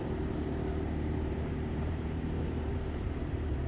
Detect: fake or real fake